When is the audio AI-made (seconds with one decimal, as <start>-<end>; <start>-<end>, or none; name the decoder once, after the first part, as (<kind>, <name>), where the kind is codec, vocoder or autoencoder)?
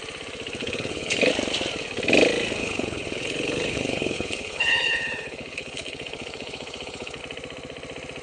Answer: 0.6-1.3 (codec, HILCodec); 2.6-7.2